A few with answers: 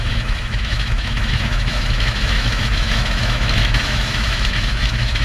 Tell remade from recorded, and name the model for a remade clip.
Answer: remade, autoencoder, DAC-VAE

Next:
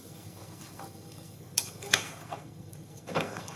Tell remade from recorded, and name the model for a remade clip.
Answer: remade, codec, SNAC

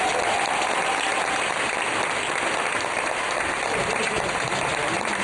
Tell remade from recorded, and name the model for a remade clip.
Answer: recorded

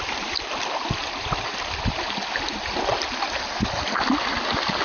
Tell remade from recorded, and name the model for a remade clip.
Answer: recorded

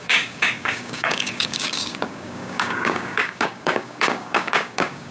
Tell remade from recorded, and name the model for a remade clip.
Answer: remade, codec, DAC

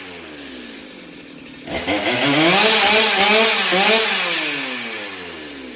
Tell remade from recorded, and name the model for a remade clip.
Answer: recorded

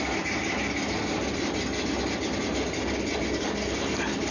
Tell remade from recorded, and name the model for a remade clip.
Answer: recorded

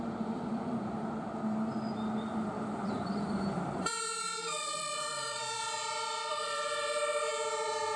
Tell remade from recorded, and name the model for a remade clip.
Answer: remade, vocoder, BigVGAN v2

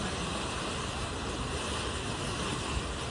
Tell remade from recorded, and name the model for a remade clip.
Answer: remade, vocoder, BigVGAN v2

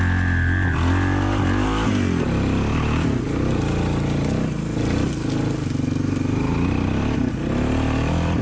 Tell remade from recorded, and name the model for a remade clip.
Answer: recorded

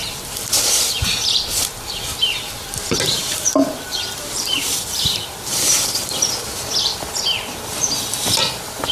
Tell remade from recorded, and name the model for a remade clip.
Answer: remade, vocoder, BigVGAN v2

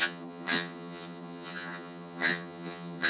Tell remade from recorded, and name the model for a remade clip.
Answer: remade, vocoder, HiFi-GAN